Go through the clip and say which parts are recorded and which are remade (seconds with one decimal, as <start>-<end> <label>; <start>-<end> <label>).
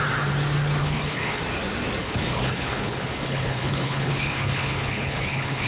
0.0-0.8 recorded; 0.8-1.4 remade; 1.4-2.0 recorded; 2.0-5.7 remade